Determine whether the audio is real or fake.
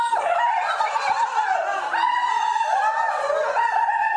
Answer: real